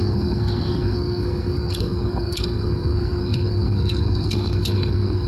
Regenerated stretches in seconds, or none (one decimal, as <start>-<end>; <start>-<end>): 0.0-5.3